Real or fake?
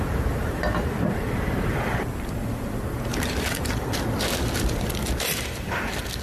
fake